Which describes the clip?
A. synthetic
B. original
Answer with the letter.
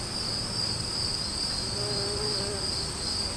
B